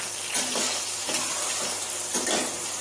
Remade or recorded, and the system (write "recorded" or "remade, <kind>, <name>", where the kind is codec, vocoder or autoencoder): recorded